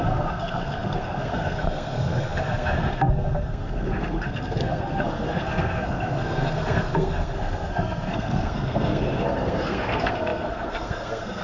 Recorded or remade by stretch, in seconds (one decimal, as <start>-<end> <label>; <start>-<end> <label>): 0.0-11.4 remade